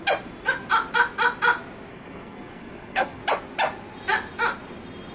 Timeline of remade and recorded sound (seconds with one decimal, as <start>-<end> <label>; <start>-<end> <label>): 0.0-1.9 recorded; 1.9-3.2 remade; 3.2-5.1 recorded